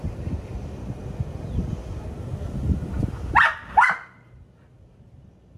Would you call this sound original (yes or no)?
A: yes